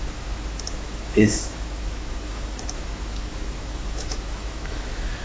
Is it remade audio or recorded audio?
remade